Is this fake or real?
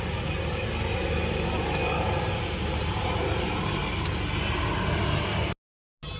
real